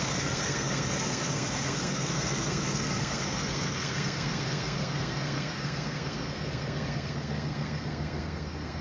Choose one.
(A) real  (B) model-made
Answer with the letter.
B